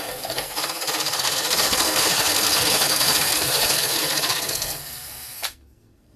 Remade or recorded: remade